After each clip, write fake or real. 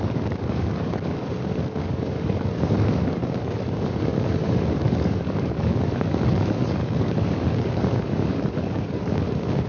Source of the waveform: fake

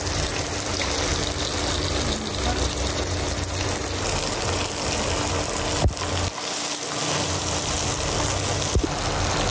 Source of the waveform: real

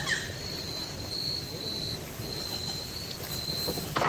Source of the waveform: real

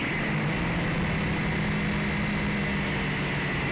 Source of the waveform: real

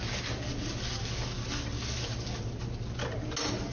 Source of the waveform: real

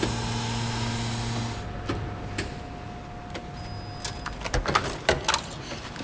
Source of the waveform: real